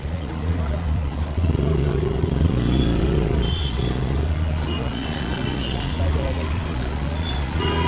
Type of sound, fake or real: fake